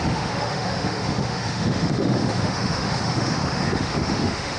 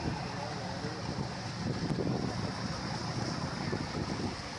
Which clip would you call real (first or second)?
second